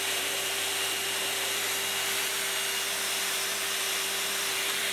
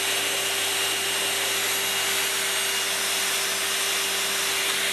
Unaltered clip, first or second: second